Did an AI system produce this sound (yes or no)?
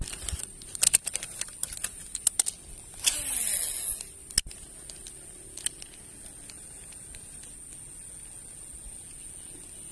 no